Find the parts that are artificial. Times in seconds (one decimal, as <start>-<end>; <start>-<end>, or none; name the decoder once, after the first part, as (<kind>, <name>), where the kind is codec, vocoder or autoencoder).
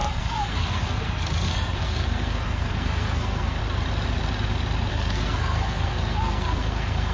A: 0.0-3.6 (codec, SNAC); 4.9-7.1